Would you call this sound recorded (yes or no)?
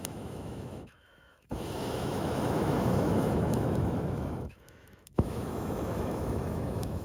no